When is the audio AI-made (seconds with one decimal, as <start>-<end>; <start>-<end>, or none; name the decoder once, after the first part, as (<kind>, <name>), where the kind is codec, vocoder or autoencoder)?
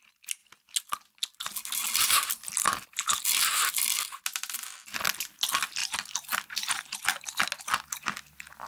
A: none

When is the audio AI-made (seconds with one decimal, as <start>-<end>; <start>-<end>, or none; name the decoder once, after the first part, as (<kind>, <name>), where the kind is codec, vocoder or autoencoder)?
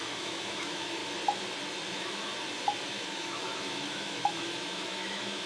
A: 0.0-1.0 (autoencoder, DAC-VAE); 1.9-2.3; 2.9-5.5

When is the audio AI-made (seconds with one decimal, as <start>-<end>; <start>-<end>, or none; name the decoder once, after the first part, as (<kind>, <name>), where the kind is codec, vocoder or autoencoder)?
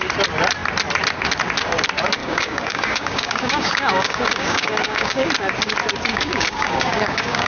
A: 2.2-5.3 (codec, DAC); 6.1-7.5